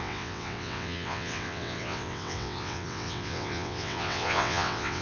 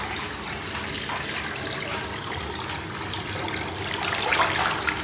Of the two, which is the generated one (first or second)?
first